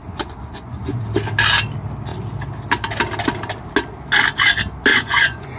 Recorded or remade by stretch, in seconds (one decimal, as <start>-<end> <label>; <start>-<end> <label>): 0.0-1.0 remade; 1.0-4.9 recorded; 4.9-5.6 remade